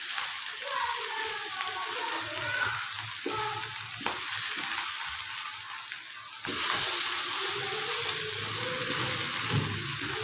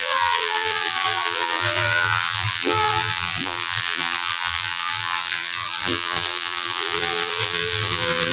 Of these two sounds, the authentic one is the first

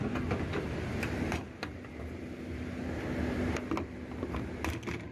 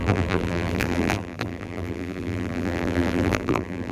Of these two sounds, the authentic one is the first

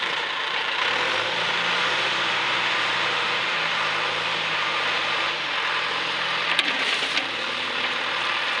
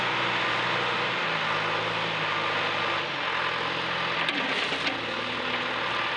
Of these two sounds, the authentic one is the second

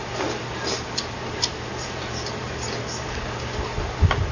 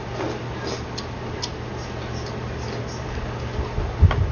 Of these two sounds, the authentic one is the second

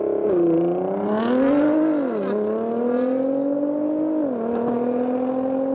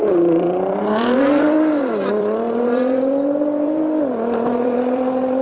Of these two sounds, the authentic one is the first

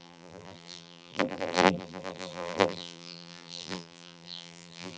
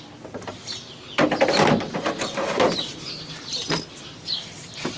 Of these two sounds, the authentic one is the second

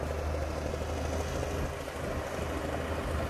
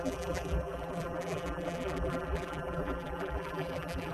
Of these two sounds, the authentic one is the first